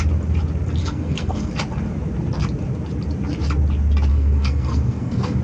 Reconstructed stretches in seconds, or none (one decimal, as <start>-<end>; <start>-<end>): 0.8-1.5; 4.1-5.4